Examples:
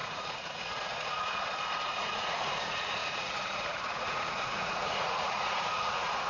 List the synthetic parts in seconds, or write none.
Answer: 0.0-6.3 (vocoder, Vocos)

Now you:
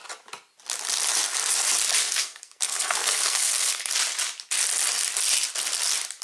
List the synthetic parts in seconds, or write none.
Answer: 2.0-3.9 (codec, SNAC)

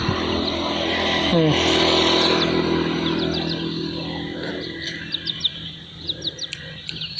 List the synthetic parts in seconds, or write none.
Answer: none

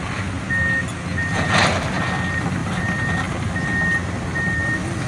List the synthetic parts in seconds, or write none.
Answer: none

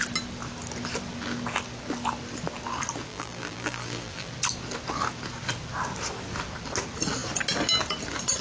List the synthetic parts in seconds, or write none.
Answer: 3.1-4.3 (vocoder, BigVGAN v2)

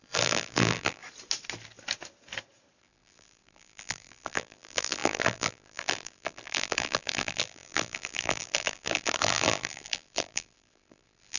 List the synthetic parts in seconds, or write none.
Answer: 0.0-1.0 (vocoder, BigVGAN v2); 2.8-11.4